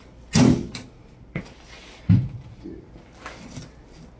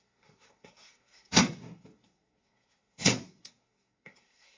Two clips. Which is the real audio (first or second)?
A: first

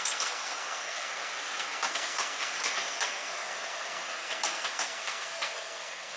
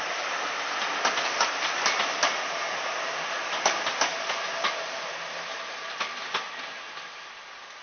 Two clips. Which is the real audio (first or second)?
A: second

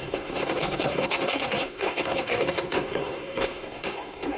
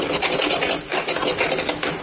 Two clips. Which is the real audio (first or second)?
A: second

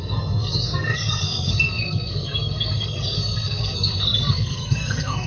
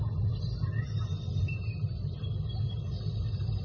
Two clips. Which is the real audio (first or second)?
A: second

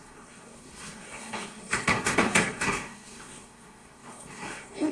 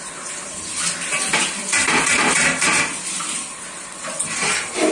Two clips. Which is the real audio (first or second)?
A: second